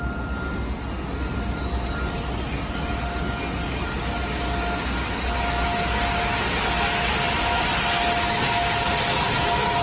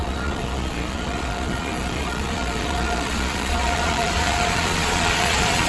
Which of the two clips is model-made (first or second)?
second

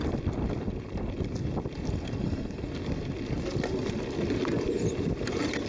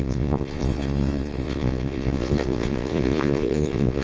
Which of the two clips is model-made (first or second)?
second